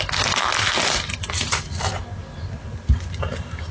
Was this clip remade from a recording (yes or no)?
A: no